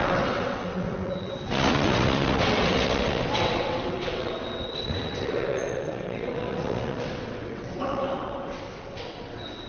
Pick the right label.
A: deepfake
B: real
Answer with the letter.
A